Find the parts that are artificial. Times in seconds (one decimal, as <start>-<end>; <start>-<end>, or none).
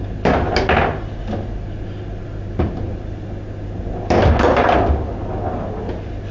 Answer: none